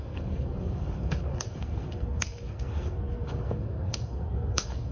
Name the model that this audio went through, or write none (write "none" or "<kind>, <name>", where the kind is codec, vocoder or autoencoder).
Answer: codec, SNAC